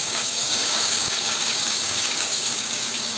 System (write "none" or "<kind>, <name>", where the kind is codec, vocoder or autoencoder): codec, DAC